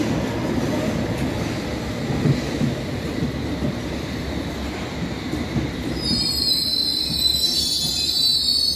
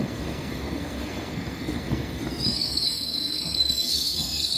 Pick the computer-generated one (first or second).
second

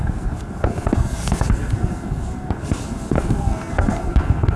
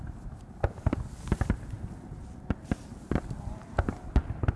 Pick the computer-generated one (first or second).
first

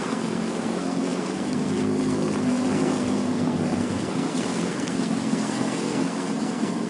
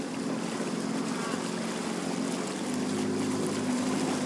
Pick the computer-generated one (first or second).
first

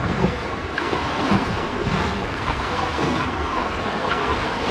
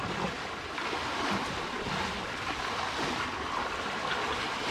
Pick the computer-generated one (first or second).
first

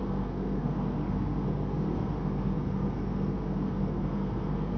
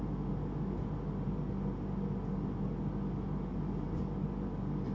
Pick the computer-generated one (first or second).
first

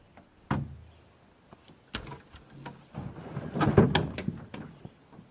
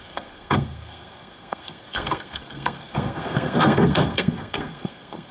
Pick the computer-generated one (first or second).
second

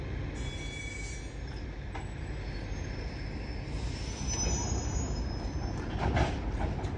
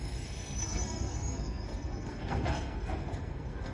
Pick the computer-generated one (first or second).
second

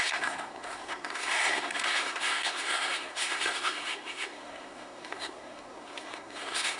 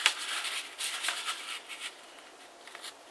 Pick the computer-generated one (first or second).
first